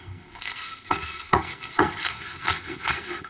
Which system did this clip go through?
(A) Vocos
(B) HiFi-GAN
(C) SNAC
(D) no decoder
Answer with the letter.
C